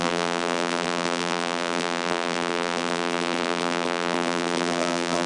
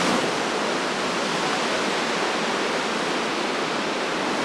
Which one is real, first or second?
second